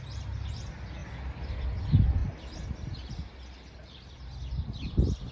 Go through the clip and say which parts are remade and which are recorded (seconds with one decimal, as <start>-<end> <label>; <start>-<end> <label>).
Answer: 0.0-5.3 recorded